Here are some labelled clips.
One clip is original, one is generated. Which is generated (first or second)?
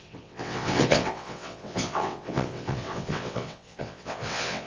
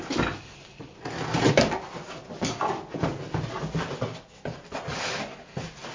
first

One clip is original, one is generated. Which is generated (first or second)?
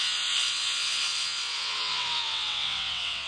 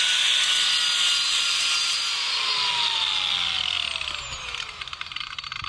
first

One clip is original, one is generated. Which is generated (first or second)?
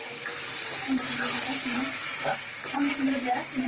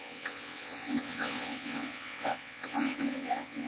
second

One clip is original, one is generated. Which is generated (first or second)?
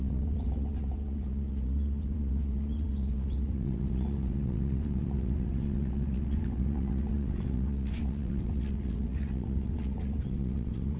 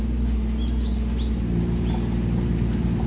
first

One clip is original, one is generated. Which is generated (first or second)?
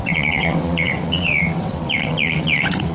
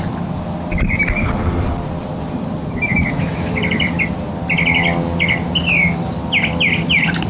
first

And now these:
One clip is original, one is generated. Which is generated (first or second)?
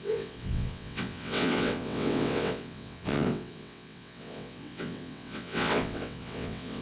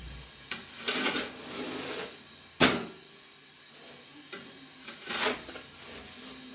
first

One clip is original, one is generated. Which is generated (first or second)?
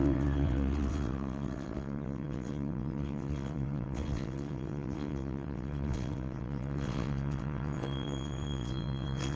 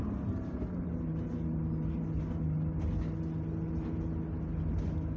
first